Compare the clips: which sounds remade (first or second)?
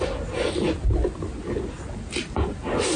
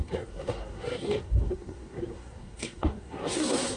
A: second